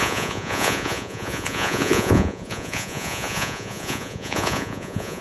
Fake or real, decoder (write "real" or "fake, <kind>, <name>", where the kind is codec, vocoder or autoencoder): fake, vocoder, Vocos